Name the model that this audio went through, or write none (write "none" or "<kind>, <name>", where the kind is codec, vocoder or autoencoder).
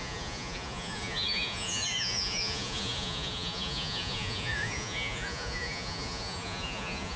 vocoder, Vocos